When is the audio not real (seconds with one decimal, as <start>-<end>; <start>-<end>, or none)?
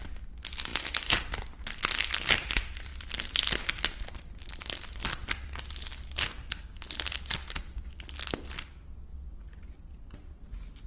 none